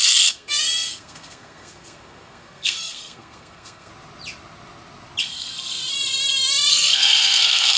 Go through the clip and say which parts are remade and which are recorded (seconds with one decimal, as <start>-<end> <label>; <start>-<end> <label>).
0.0-3.9 remade; 3.9-5.2 recorded; 5.2-5.8 remade; 5.8-6.7 recorded; 6.7-7.8 remade